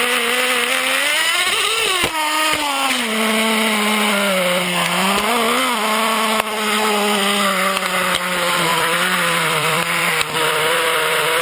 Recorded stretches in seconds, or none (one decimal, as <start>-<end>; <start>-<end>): 0.0-8.7; 10.0-10.4